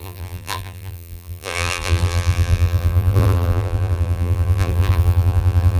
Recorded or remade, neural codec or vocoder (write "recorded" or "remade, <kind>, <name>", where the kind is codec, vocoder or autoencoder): remade, vocoder, BigVGAN v2